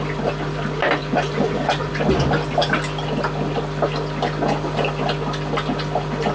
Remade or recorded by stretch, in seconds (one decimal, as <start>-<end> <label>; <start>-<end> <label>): 0.0-1.0 recorded; 1.0-1.9 remade; 1.9-6.3 recorded